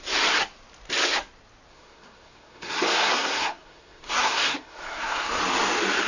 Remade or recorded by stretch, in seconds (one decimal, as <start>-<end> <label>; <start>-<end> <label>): 0.0-1.7 recorded; 1.7-5.4 remade; 5.4-6.1 recorded